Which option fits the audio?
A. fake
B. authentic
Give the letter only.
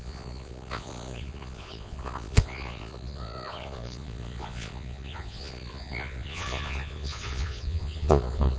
A